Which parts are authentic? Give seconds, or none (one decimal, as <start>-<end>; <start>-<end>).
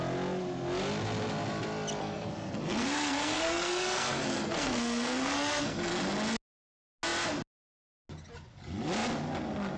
0.0-2.0; 5.9-9.8